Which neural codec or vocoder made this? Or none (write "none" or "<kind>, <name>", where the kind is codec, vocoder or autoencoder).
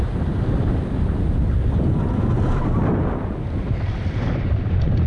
none